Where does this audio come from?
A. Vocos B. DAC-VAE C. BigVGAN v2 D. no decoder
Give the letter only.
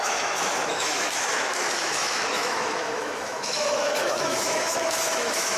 B